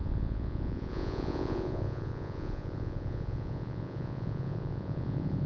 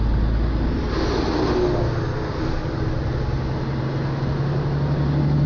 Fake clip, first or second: first